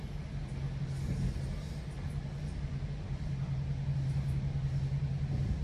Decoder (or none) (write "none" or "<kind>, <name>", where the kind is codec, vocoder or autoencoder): none